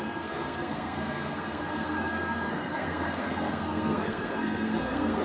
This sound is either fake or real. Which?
fake